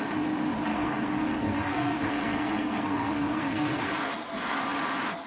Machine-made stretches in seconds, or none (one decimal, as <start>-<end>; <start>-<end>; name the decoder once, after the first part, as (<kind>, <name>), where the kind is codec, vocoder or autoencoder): 0.7-3.9 (codec, SNAC)